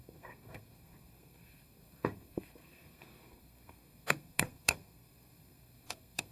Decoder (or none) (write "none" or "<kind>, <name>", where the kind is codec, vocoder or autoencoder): codec, SNAC